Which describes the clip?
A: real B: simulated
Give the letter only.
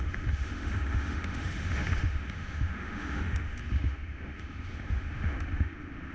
B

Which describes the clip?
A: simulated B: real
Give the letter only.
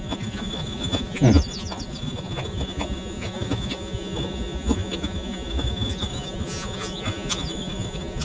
A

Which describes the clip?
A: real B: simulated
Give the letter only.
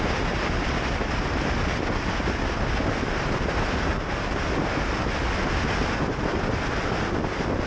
A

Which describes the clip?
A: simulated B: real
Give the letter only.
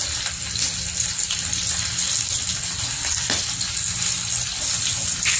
B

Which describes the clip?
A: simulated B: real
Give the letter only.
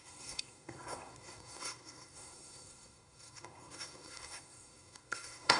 A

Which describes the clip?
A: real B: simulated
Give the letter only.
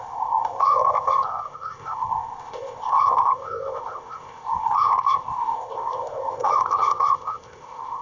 B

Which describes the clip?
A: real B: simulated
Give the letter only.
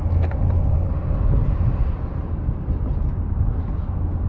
A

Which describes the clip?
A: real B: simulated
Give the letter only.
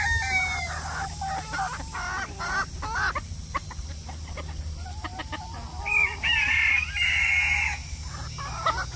A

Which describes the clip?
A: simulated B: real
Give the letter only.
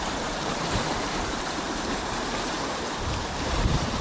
A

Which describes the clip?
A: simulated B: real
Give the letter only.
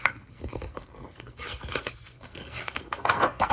A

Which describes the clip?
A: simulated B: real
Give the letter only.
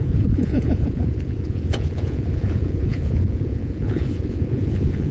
A